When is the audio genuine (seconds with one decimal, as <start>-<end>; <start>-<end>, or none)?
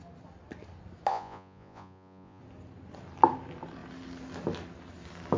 0.0-1.1; 2.4-5.4